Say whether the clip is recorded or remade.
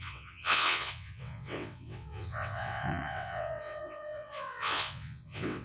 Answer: remade